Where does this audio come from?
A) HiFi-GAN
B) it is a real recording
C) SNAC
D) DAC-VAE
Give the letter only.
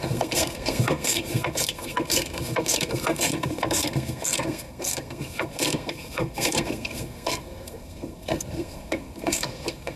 C